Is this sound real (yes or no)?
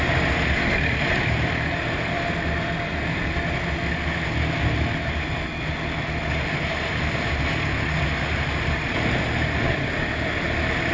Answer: yes